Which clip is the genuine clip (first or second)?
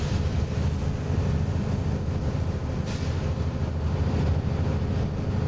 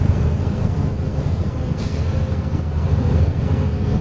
first